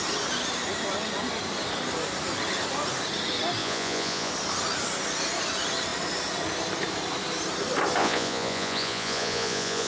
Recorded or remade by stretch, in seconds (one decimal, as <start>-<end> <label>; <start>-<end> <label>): 0.0-3.6 recorded; 3.6-4.3 remade; 4.3-8.0 recorded; 8.0-9.9 remade